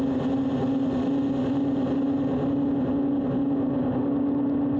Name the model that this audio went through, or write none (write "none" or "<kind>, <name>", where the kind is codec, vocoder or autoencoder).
none